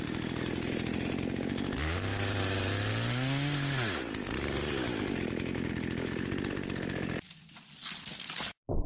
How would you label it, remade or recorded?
recorded